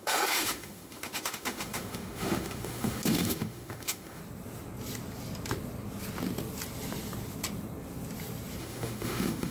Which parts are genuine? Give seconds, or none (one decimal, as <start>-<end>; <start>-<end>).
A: 4.2-8.6